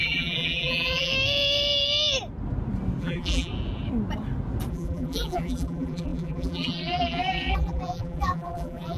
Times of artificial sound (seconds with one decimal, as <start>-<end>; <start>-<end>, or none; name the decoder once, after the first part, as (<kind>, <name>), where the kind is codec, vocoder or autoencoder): 0.0-1.1 (vocoder, BigVGAN v2); 3.0-3.5; 4.7-9.0